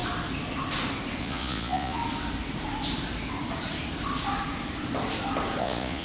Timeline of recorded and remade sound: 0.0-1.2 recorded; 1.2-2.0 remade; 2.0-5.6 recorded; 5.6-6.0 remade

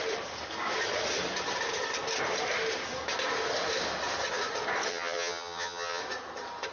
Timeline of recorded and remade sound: 0.0-4.9 recorded; 4.9-6.0 remade; 6.0-6.7 recorded

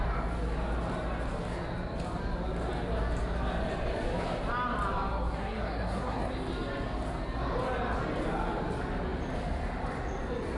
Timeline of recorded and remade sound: 0.0-5.4 recorded; 5.4-6.3 remade; 6.3-10.6 recorded

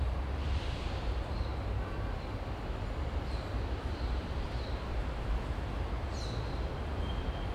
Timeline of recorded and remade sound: 0.0-1.5 remade; 1.5-4.2 recorded; 4.2-5.0 remade; 5.0-6.8 recorded; 6.8-7.5 remade

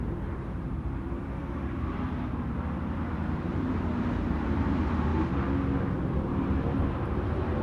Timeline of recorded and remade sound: 0.0-5.1 remade; 5.1-6.0 recorded; 6.0-7.6 remade